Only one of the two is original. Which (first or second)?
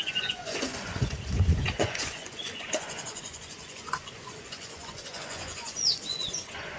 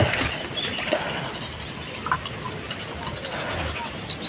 second